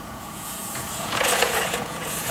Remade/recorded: remade